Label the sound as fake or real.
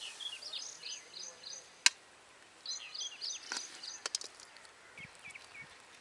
real